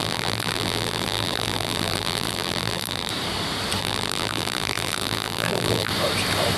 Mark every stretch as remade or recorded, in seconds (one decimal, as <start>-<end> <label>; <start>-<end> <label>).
0.0-3.1 remade; 3.1-3.8 recorded; 3.8-5.9 remade; 5.9-6.6 recorded